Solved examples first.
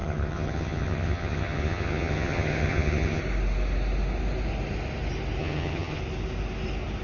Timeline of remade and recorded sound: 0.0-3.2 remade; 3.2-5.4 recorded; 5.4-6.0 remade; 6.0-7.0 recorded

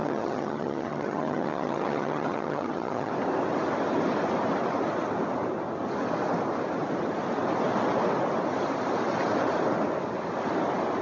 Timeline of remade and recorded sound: 0.0-3.1 remade; 3.1-11.0 recorded

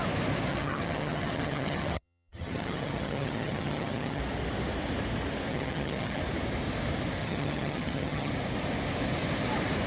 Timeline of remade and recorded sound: 0.0-0.5 recorded; 0.5-4.2 remade; 4.2-5.5 recorded; 5.5-6.2 remade; 6.2-7.2 recorded; 7.2-8.3 remade; 8.3-9.9 recorded

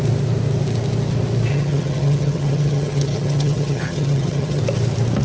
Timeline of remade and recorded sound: 0.0-1.5 recorded; 1.5-4.6 remade; 4.6-5.2 recorded

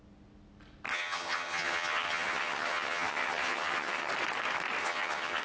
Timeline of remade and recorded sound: 0.0-0.9 recorded; 0.9-4.1 remade; 4.1-4.8 recorded; 4.8-5.4 remade

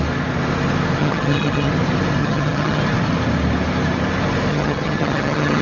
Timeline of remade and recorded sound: 0.0-1.0 recorded; 1.0-1.7 remade; 1.7-2.2 recorded; 2.2-2.8 remade; 2.8-4.5 recorded; 4.5-5.6 remade